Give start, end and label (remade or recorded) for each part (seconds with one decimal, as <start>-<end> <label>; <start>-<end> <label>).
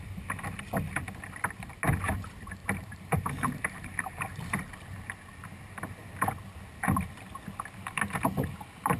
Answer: 0.0-2.6 recorded; 2.6-4.6 remade; 4.6-9.0 recorded